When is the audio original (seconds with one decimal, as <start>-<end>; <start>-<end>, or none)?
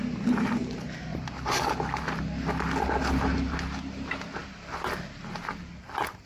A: 0.0-1.1; 1.6-4.4; 5.3-6.3